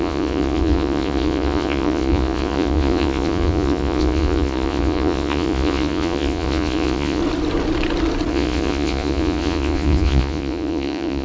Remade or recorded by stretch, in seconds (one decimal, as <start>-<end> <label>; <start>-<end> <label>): 0.0-7.2 remade; 7.2-8.3 recorded; 8.3-11.2 remade